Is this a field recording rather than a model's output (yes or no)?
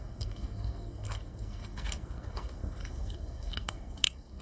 no